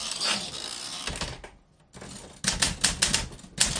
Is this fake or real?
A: real